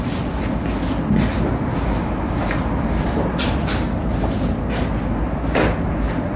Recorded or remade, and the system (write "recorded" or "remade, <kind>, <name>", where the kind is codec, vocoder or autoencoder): recorded